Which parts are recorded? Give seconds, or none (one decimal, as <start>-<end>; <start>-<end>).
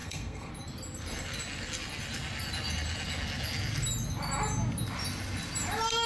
0.5-6.1